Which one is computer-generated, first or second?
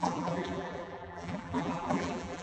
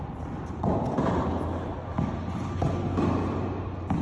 first